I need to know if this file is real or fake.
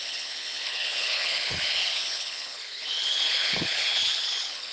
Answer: fake